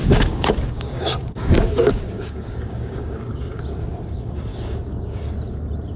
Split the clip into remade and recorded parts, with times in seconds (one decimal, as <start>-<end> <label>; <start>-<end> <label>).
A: 0.0-3.6 remade; 3.6-4.5 recorded; 4.5-5.2 remade; 5.2-6.0 recorded